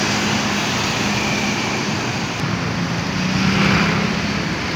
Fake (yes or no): no